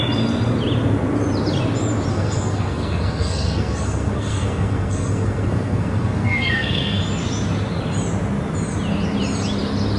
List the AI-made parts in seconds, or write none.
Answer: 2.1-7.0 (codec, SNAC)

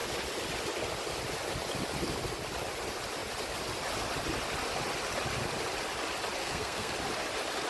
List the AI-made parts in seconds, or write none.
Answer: 6.4-6.9 (codec, SNAC)